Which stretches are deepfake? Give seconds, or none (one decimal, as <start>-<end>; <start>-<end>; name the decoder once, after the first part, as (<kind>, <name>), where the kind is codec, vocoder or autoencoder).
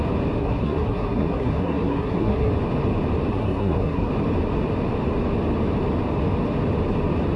0.4-2.5 (codec, SNAC); 3.3-4.1